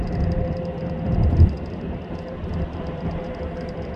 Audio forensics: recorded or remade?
remade